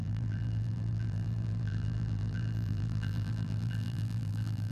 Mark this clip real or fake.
fake